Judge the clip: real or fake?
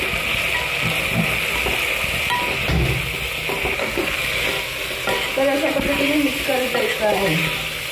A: real